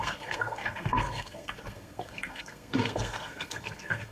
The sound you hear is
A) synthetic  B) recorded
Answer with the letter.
A